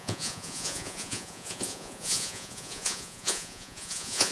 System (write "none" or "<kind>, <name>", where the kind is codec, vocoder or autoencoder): vocoder, Vocos